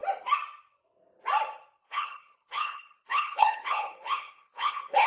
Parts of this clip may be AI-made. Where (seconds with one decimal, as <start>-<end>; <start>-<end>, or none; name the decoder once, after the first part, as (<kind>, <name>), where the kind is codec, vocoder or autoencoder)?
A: 1.8-5.1 (codec, HILCodec)